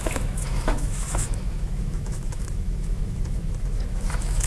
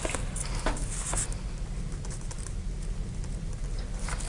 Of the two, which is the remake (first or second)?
first